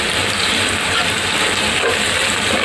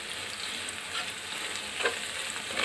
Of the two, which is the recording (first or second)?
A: second